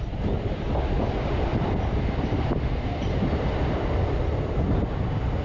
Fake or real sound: fake